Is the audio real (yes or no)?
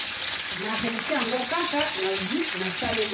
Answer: no